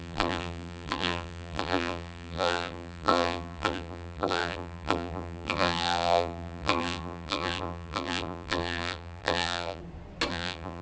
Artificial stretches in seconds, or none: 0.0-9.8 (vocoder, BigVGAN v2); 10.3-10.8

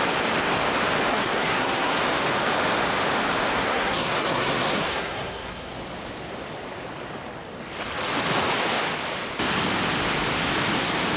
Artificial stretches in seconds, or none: 1.1-2.0 (codec, SNAC); 3.6-5.7